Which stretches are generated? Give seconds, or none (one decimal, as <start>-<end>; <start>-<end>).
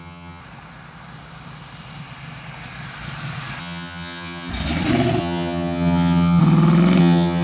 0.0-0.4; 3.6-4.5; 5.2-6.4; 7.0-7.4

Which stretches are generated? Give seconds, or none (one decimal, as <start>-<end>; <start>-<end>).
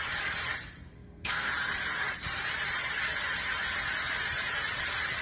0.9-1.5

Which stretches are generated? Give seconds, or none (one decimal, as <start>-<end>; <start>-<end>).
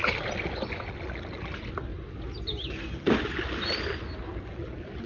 none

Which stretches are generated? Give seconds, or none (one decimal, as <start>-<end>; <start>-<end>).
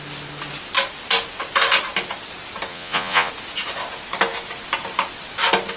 2.7-3.3